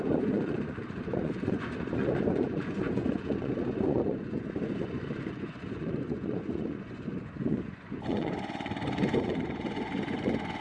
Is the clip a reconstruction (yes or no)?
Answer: yes